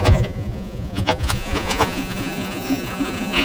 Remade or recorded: remade